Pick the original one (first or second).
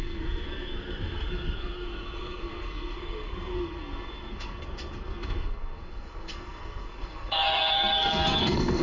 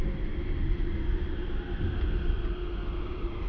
second